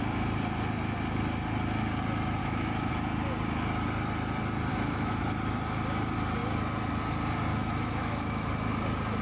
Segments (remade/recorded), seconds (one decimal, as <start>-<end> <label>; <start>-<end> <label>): 0.0-2.4 recorded; 2.4-2.9 remade; 2.9-4.7 recorded; 4.7-5.2 remade; 5.2-7.5 recorded; 7.5-8.5 remade; 8.5-9.2 recorded